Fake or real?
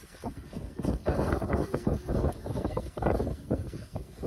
fake